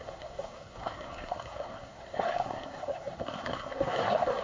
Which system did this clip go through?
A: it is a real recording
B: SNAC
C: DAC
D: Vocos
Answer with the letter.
B